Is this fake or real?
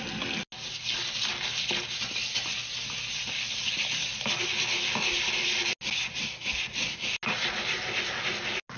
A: real